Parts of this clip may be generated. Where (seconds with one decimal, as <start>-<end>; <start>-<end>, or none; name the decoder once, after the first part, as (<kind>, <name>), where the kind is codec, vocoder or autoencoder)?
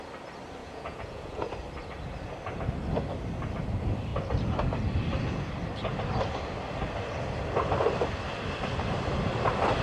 0.6-1.5 (vocoder, Vocos)